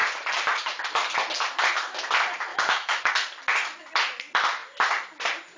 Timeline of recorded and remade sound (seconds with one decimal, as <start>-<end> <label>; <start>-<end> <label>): 0.0-2.5 recorded; 2.5-3.1 remade; 3.1-5.6 recorded